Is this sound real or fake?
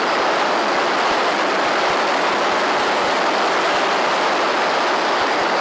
real